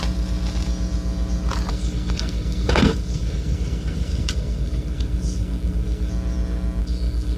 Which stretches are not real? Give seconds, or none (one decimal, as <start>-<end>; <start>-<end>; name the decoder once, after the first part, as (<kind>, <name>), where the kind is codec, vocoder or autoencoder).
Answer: 1.7-6.1 (codec, SNAC); 6.8-7.4

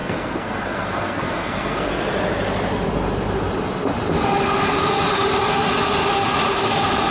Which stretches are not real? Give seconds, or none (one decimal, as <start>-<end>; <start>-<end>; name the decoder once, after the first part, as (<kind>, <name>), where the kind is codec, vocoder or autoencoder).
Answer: 0.0-1.9 (codec, SNAC)